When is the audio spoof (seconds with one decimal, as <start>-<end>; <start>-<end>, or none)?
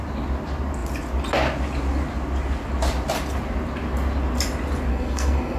4.9-5.6